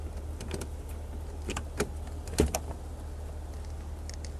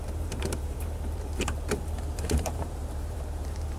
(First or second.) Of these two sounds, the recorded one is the first